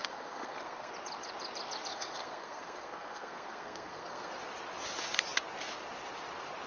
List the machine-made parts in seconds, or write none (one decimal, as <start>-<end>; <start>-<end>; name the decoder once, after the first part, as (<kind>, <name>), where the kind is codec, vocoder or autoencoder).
0.0-0.9 (codec, SNAC); 1.9-4.3